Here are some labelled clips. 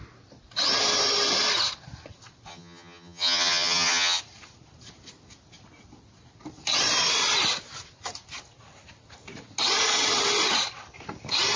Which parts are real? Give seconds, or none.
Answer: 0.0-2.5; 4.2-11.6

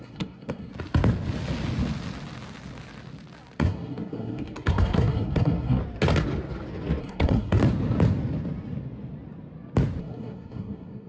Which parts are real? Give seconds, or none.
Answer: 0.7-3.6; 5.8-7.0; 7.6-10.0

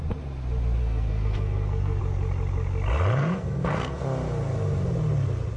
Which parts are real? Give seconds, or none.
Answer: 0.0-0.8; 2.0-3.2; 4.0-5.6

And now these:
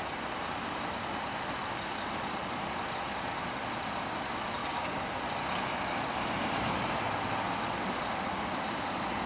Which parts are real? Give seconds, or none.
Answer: 0.0-4.6; 5.2-9.3